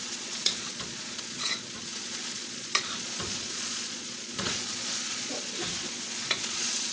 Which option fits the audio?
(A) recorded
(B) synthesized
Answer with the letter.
B